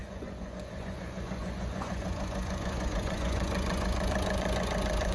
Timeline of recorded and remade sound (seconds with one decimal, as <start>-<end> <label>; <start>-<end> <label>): 0.0-5.1 remade